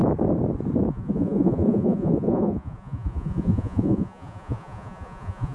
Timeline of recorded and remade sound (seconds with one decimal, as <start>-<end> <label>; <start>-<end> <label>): 0.0-0.9 recorded; 0.9-5.5 remade